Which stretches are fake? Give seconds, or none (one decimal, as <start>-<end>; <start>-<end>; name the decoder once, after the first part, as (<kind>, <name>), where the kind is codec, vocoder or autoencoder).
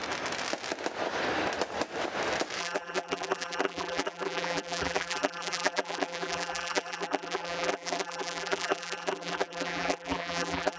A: 2.6-10.8 (vocoder, BigVGAN v2)